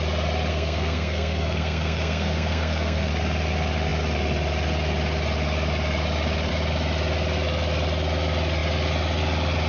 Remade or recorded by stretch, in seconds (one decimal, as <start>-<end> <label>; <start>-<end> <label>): 0.0-0.5 recorded; 0.5-3.1 remade; 3.1-9.7 recorded